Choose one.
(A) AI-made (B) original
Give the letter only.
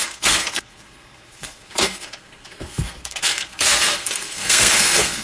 A